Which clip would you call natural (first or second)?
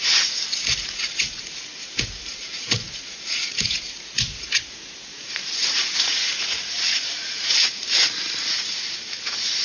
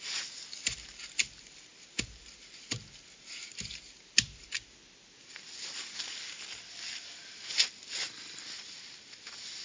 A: second